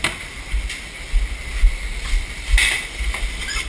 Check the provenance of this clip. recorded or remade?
recorded